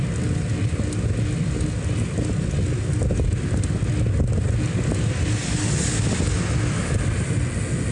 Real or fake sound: real